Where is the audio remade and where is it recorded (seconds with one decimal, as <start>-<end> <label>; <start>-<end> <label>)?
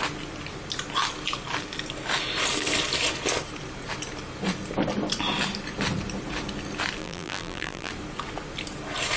0.0-7.0 recorded; 7.0-7.9 remade; 7.9-9.2 recorded